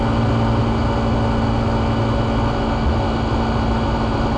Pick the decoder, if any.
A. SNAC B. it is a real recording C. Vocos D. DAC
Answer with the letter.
B